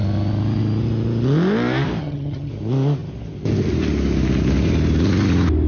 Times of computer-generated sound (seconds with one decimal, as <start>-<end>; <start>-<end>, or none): 2.0-2.5